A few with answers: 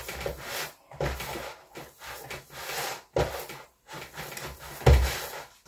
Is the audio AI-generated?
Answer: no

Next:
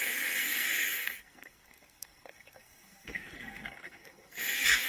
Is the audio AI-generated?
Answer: yes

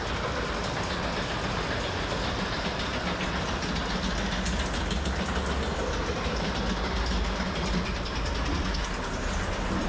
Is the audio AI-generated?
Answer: no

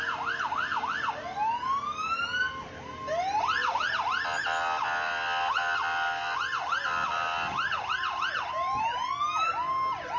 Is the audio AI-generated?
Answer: no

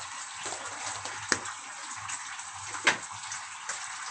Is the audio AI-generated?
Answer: no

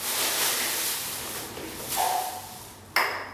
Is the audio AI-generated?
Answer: no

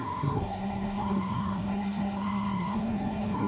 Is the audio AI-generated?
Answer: yes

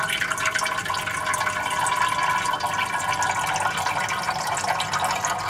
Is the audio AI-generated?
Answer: no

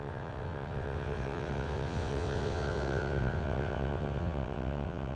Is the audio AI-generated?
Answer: yes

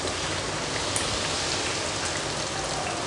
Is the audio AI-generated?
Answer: no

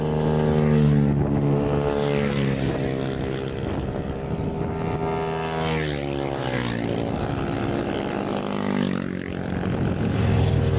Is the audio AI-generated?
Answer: no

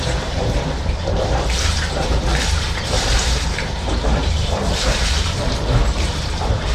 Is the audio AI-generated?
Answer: yes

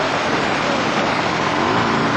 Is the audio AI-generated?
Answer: no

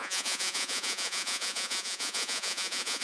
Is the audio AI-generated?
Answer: yes